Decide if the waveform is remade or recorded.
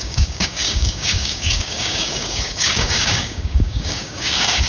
remade